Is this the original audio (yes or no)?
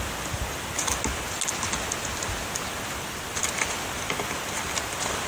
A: yes